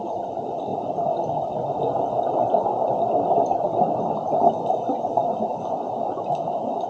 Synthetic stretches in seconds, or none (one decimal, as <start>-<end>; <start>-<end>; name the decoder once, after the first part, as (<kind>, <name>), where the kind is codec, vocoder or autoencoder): none